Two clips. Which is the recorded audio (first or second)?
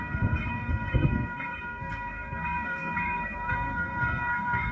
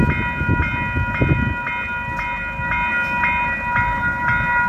second